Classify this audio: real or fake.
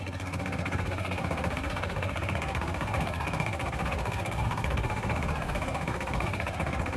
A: fake